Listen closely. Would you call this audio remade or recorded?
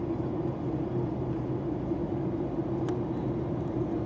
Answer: recorded